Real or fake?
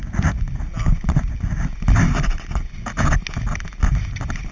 real